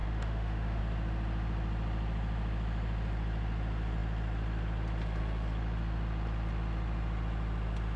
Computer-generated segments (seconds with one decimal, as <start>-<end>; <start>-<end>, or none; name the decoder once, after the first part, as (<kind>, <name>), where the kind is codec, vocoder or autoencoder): 0.0-0.8 (autoencoder, DAC-VAE)

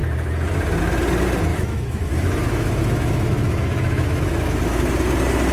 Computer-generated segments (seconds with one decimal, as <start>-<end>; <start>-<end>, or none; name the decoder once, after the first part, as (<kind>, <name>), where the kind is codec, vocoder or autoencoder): 1.5-4.8 (autoencoder, DAC-VAE)

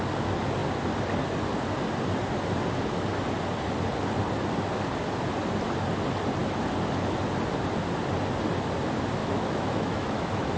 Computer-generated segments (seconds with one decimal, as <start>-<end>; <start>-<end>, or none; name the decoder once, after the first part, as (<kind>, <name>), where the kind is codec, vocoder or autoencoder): 9.2-10.6 (autoencoder, DAC-VAE)

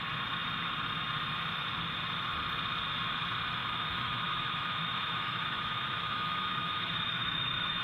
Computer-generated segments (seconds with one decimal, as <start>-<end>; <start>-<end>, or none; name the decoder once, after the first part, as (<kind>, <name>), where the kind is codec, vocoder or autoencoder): 3.6-7.8 (autoencoder, DAC-VAE)

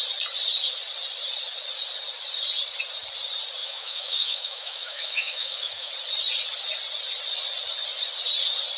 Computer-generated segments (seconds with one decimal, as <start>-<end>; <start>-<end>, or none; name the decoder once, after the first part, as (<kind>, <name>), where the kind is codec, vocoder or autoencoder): 3.6-5.9 (autoencoder, DAC-VAE)